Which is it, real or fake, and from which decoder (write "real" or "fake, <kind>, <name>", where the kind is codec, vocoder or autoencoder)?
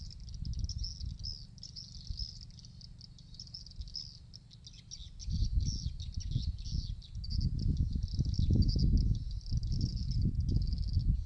real